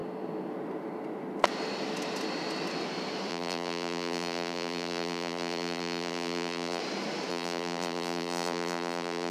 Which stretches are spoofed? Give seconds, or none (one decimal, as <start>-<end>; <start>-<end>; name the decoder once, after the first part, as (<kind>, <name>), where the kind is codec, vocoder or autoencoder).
3.3-6.8 (vocoder, BigVGAN v2); 7.3-9.3

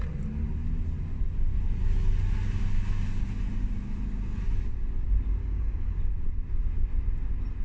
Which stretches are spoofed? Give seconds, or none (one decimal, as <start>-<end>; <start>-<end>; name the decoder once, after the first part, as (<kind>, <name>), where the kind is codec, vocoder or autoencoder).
5.4-6.0 (codec, DAC)